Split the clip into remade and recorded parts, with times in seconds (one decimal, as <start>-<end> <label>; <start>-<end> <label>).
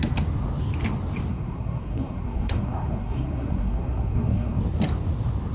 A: 0.0-1.3 recorded; 1.3-4.6 remade; 4.6-5.5 recorded